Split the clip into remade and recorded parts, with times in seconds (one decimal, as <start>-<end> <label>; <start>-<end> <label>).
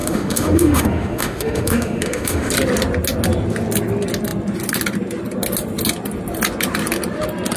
0.0-2.5 remade; 2.5-7.6 recorded